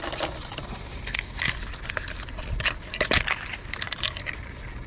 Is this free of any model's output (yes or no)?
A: yes